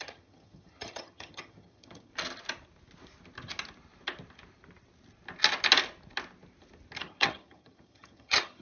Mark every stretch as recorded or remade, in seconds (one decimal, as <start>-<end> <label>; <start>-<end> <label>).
0.0-2.1 remade; 2.1-7.0 recorded; 7.0-8.6 remade